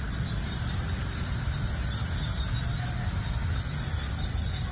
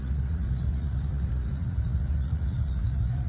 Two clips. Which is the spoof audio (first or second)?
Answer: second